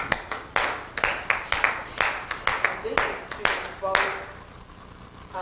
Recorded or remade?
recorded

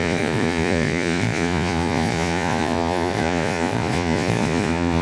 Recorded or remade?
remade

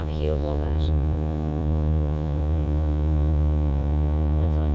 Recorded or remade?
remade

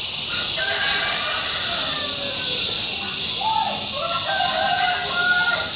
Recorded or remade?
recorded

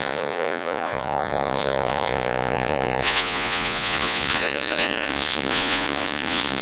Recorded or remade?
remade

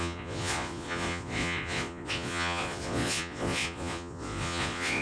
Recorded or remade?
remade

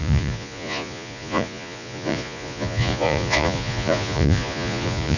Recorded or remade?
remade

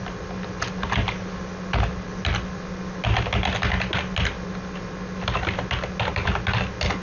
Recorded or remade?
recorded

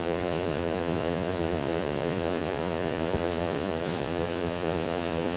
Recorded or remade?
remade